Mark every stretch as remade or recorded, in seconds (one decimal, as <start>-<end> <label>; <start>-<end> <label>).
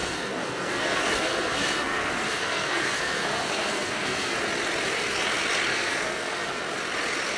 0.0-4.4 remade; 4.4-5.7 recorded; 5.7-6.6 remade; 6.6-7.4 recorded